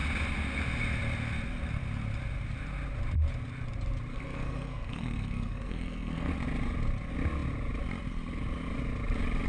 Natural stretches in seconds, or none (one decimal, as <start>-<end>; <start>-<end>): 0.0-4.1; 6.3-9.5